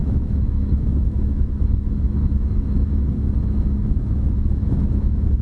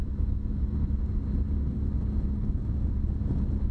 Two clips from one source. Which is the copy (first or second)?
first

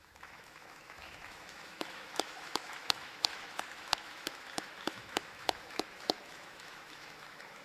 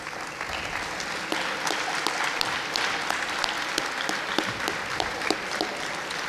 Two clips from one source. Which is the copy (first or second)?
first